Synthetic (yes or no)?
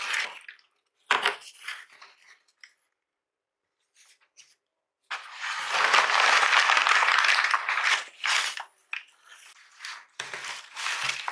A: no